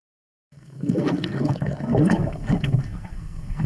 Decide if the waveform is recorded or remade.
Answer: remade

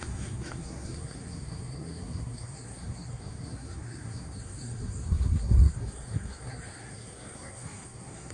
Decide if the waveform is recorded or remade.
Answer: remade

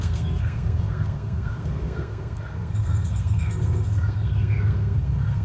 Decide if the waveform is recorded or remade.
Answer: remade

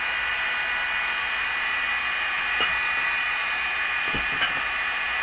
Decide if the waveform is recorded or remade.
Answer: recorded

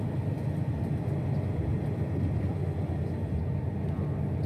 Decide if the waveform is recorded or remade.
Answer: recorded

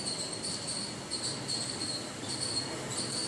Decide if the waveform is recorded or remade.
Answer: recorded